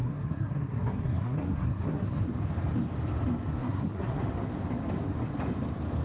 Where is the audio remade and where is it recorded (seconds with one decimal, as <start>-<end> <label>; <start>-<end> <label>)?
0.0-2.3 remade; 2.3-3.6 recorded; 3.6-4.2 remade; 4.2-6.0 recorded